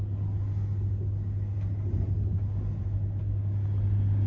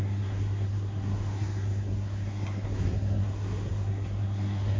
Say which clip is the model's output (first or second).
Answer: second